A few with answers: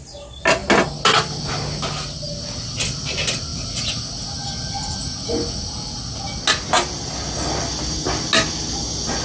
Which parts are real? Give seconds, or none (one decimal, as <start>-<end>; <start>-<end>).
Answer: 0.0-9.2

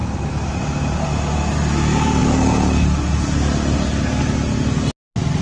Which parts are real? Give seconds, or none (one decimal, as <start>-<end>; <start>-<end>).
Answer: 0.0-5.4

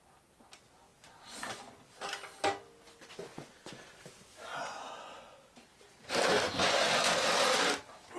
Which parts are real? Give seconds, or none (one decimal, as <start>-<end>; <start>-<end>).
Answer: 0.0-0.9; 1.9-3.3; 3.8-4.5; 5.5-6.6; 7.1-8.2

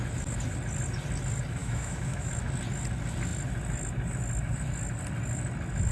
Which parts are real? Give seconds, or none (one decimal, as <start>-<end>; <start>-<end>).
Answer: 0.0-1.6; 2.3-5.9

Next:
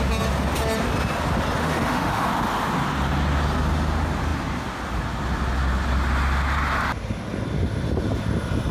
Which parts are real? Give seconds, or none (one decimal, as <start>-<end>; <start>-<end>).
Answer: 0.0-1.6; 2.3-8.7

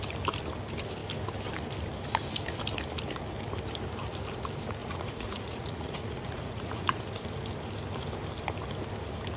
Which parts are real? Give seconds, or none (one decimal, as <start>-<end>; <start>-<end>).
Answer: 0.0-4.8; 7.0-9.4

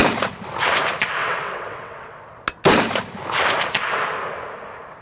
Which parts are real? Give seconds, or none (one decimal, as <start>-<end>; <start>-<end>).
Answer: 0.0-1.2; 2.2-5.0

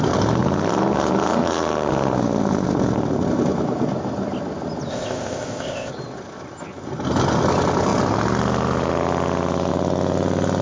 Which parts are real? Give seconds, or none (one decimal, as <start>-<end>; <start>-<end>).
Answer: 0.0-4.9; 5.9-10.6